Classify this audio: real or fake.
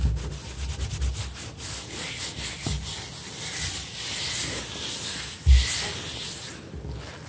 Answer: real